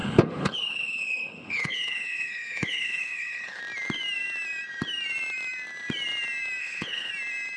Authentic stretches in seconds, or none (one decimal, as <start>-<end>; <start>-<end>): 3.6-6.6; 7.1-7.6